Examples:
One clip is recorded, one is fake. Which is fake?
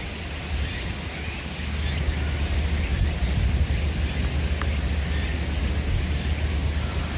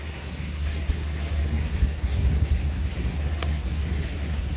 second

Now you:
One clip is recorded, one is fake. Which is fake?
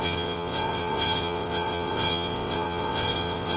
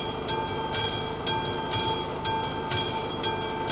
first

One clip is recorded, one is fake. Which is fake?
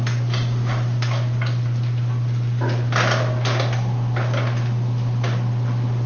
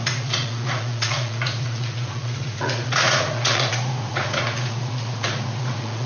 second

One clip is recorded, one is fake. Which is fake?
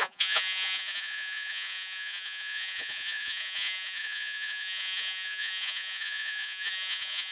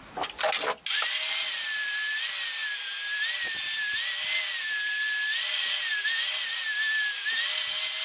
first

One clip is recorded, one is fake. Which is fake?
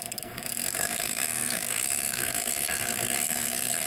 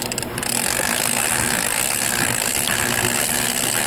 first